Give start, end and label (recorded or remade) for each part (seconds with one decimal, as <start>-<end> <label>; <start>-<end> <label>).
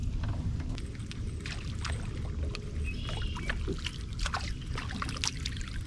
0.0-5.9 recorded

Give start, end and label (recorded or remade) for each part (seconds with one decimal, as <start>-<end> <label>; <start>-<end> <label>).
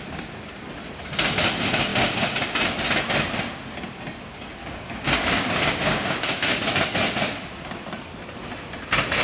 0.0-4.6 recorded; 4.6-6.6 remade; 6.6-9.2 recorded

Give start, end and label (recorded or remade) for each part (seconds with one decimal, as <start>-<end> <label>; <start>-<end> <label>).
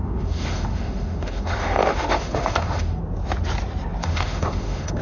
0.0-3.0 remade; 3.0-4.0 recorded; 4.0-5.0 remade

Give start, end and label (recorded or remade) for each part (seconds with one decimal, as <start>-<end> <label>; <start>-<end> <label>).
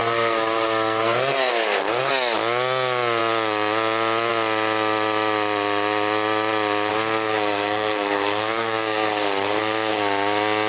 0.0-2.1 remade; 2.1-6.9 recorded; 6.9-10.0 remade; 10.0-10.7 recorded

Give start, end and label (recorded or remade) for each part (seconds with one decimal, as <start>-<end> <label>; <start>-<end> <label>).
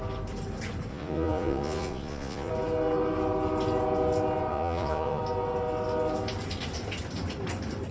0.0-0.9 recorded; 0.9-2.5 remade; 2.5-4.5 recorded; 4.5-5.2 remade; 5.2-7.9 recorded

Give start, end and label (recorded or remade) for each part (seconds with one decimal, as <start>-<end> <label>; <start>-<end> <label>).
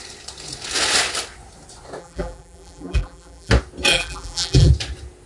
0.0-2.0 recorded; 2.0-3.5 remade; 3.5-3.9 recorded; 3.9-4.7 remade; 4.7-5.3 recorded